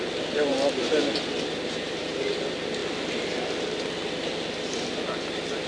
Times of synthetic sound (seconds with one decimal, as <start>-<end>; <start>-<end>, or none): 0.5-2.2